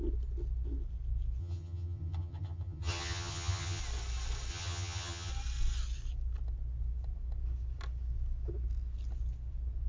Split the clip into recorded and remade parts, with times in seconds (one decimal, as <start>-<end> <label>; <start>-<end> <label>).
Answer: 0.0-1.4 recorded; 1.4-3.8 remade; 3.8-4.5 recorded; 4.5-5.3 remade; 5.3-9.9 recorded

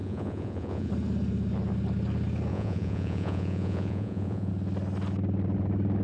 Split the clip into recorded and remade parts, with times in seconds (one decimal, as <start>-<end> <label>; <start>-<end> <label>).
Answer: 0.0-0.9 remade; 0.9-2.5 recorded; 2.5-4.5 remade; 4.5-6.0 recorded